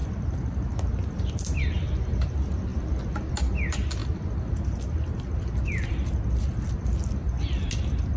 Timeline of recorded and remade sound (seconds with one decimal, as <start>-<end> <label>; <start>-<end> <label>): 0.0-8.2 recorded